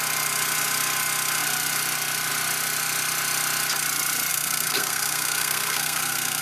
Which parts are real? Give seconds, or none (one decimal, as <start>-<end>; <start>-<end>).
0.0-4.3